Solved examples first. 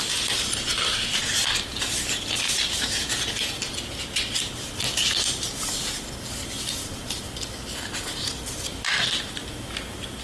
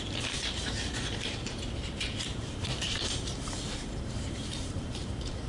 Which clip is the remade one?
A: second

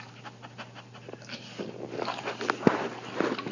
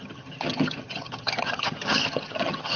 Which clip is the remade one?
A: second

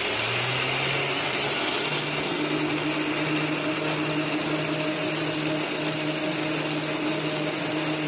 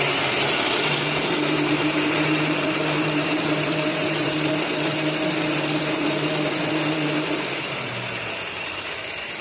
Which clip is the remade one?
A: second